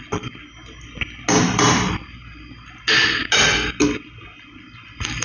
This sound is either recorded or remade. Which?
recorded